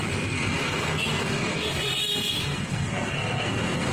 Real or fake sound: fake